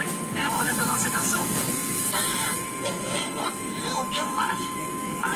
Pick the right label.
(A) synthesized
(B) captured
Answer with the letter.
A